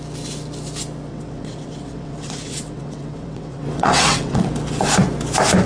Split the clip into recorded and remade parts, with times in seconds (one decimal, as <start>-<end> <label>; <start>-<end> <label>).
0.0-1.1 recorded; 1.1-4.5 remade; 4.5-5.7 recorded